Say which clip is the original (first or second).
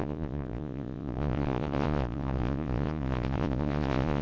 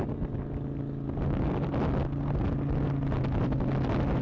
second